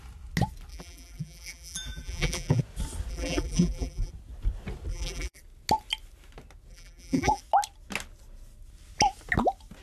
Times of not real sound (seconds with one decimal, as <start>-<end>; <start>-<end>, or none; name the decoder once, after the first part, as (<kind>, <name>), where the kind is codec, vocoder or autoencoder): 0.7-2.6 (vocoder, BigVGAN v2); 3.1-4.1; 4.9-5.4; 6.7-7.4